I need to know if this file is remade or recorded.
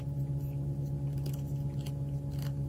recorded